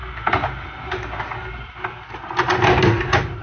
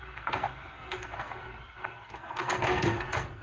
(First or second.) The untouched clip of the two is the first